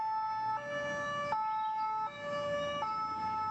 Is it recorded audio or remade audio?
recorded